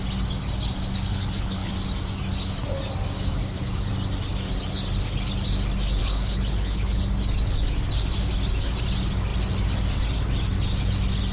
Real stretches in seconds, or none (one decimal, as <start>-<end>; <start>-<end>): 0.0-1.1; 1.7-3.4; 3.9-6.0; 7.0-11.3